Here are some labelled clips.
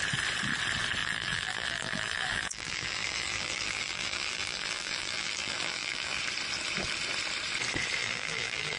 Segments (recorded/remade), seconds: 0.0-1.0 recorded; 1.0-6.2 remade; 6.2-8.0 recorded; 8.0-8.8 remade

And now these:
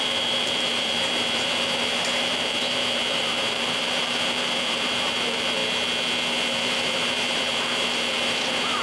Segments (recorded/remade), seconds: 0.0-5.6 remade; 5.6-6.3 recorded; 6.3-8.8 remade

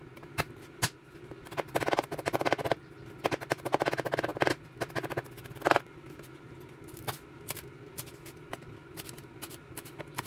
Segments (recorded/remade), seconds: 0.0-10.3 recorded

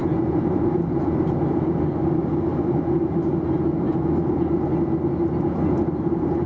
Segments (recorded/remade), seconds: 0.0-1.4 remade; 1.4-6.5 recorded